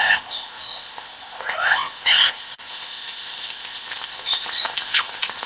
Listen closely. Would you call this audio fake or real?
fake